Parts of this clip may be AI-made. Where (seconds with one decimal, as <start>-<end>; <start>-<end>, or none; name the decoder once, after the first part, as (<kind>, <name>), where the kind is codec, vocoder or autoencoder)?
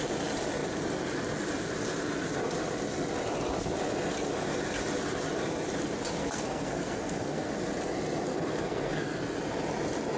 6.2-7.5 (codec, SNAC); 8.3-9.2